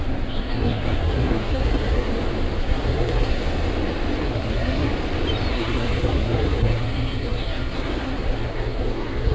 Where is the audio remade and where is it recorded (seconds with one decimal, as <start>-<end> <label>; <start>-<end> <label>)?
0.0-2.1 remade; 2.1-2.6 recorded; 2.6-3.4 remade; 3.4-4.2 recorded; 4.2-4.9 remade; 4.9-5.5 recorded; 5.5-9.3 remade